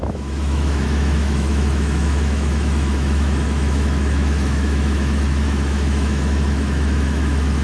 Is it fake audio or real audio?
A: fake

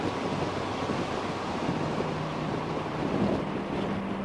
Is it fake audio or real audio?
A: real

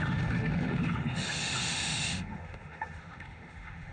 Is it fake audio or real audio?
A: fake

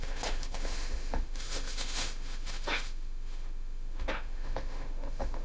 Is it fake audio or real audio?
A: fake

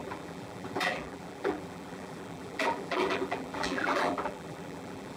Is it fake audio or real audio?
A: fake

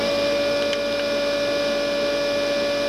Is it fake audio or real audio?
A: real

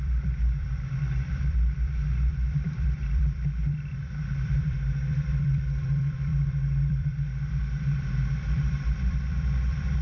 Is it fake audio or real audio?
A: fake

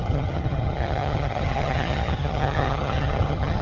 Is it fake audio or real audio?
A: fake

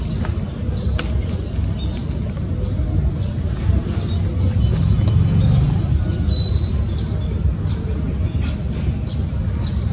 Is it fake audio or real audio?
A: real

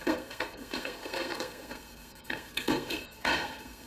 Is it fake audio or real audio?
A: fake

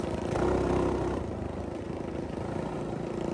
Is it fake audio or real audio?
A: real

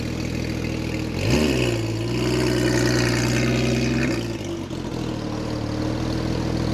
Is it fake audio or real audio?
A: real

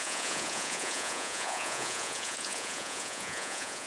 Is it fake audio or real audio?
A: fake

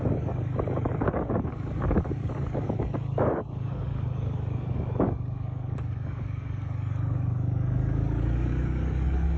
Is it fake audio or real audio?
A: fake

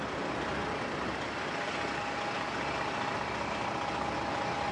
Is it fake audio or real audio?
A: real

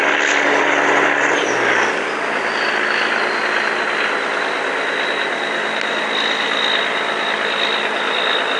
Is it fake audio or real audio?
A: real